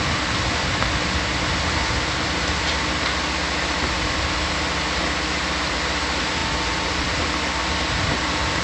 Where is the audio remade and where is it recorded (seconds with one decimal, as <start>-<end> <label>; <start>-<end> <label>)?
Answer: 0.0-8.6 recorded